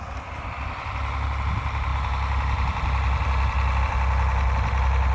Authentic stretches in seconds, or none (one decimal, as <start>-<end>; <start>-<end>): 0.0-5.1